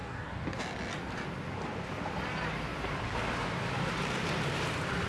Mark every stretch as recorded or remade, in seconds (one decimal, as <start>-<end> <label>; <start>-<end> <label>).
0.0-0.6 remade; 0.6-5.1 recorded